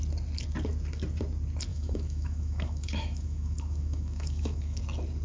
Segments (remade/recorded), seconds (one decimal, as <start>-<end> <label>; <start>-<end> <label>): 0.0-1.7 recorded; 1.7-4.8 remade; 4.8-5.2 recorded